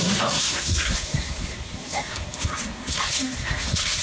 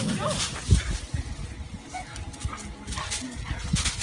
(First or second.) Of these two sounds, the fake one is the first